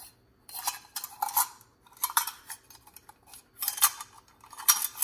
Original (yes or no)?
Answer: yes